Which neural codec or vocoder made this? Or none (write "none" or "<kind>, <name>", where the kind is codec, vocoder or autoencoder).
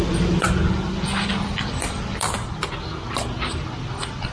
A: none